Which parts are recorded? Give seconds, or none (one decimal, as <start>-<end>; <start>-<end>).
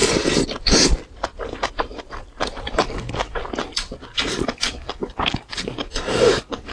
0.0-2.7; 3.4-4.3